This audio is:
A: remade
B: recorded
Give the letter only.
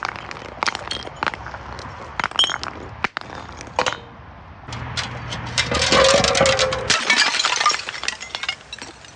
B